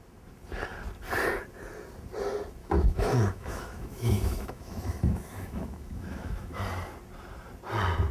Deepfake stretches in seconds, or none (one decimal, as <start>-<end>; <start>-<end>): 2.6-6.6